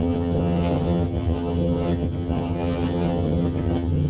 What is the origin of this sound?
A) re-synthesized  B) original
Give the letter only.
A